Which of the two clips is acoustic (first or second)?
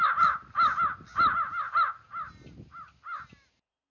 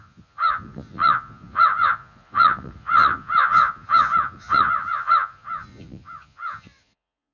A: first